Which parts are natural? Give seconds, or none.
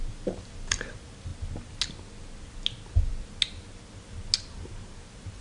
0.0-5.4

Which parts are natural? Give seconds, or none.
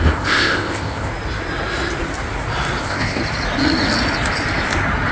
1.1-2.8; 3.2-5.1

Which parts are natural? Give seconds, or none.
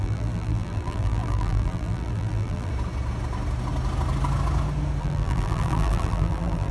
2.7-5.0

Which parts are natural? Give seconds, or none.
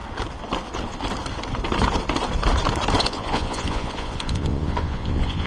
0.0-3.0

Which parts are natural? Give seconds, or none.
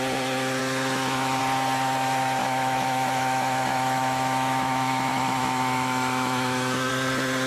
0.0-0.6; 1.4-2.4; 6.9-7.5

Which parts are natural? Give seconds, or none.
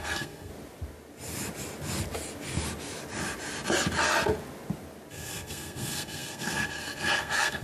0.5-5.1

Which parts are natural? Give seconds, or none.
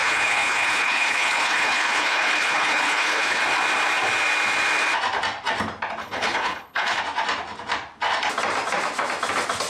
3.4-6.0; 7.0-9.7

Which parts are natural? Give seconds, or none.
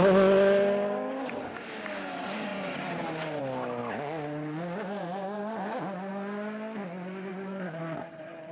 0.0-2.5; 3.4-7.3; 7.8-8.5